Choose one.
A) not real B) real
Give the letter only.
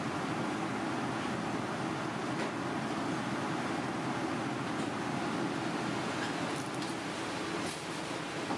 B